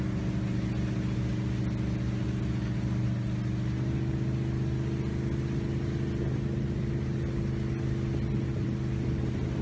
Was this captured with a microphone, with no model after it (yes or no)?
yes